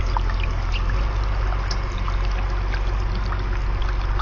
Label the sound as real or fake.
real